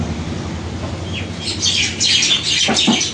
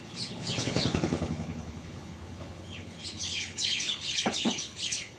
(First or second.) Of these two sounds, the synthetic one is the second